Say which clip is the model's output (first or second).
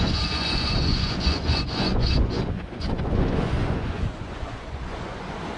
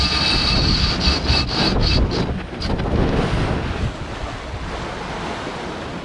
first